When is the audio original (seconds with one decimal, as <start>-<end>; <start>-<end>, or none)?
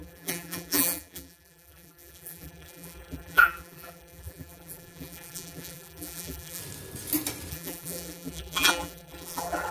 6.6-7.5